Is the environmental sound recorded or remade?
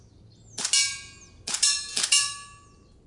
recorded